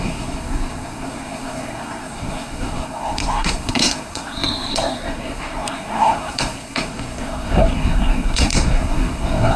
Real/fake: fake